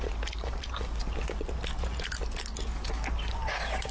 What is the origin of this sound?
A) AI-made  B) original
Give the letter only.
B